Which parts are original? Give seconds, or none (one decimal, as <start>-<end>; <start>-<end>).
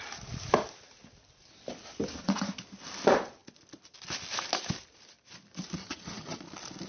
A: 0.0-5.8; 6.4-6.9